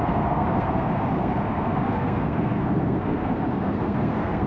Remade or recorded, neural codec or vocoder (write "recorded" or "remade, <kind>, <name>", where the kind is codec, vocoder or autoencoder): remade, codec, SNAC